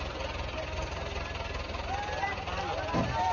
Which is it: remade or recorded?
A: recorded